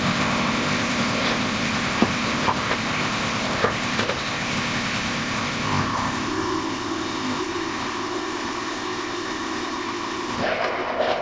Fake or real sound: fake